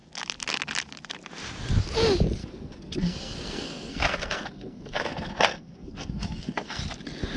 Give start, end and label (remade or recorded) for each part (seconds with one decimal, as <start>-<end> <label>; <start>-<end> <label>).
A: 0.0-2.4 recorded; 2.4-6.8 remade; 6.8-7.4 recorded